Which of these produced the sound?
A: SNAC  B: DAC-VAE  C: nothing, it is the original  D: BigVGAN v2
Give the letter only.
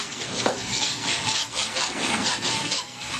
A